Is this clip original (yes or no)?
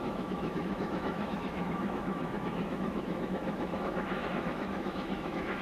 no